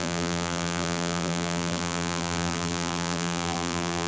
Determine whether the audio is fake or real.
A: fake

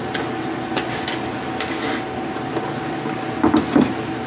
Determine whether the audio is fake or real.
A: real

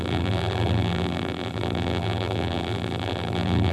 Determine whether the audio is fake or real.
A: fake